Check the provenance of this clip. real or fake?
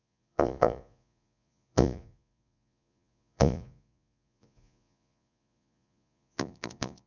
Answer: fake